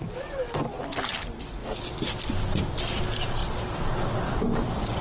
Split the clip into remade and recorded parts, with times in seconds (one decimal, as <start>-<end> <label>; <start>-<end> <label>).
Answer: 0.0-5.0 recorded